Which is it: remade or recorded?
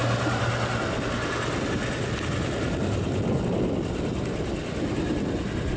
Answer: recorded